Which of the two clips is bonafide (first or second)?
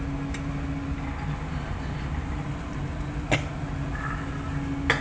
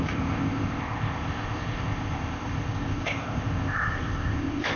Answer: first